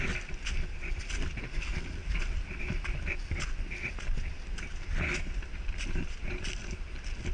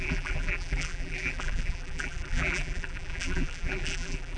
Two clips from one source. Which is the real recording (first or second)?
first